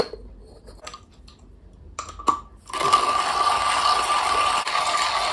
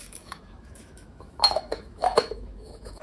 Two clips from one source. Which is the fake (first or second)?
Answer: second